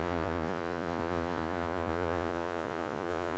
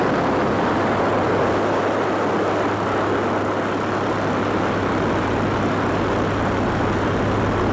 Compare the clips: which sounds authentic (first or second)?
second